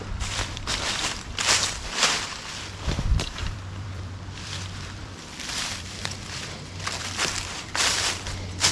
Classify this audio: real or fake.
fake